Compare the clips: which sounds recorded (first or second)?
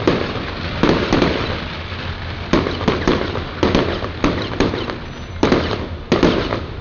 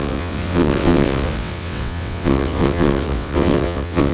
first